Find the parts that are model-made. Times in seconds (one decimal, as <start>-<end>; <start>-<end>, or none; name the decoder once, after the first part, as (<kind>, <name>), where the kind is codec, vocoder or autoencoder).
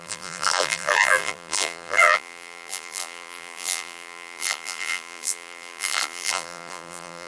0.0-7.3 (vocoder, BigVGAN v2)